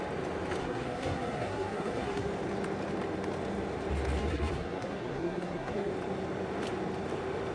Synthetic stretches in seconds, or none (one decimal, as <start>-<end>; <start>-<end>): 0.6-2.3; 4.2-5.9